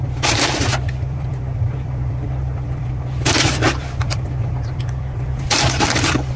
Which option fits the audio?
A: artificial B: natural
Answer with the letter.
A